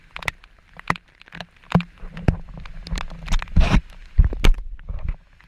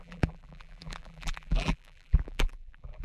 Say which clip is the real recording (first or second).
first